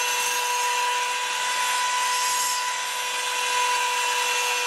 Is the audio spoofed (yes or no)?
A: no